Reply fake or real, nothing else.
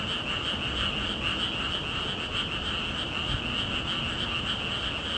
real